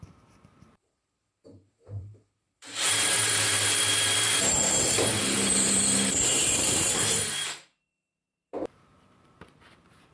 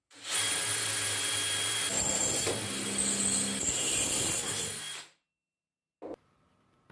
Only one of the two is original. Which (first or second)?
second